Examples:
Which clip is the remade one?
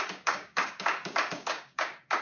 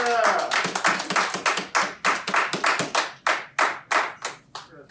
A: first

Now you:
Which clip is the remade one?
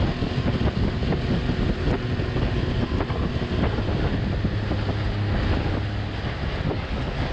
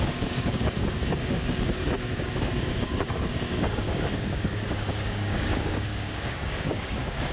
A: second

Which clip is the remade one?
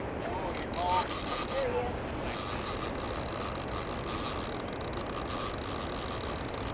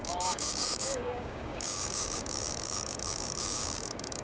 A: second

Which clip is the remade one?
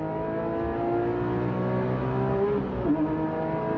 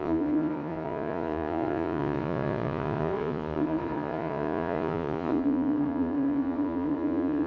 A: second